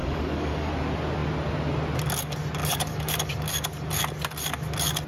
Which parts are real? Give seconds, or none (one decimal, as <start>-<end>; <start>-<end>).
0.7-2.6; 3.1-5.1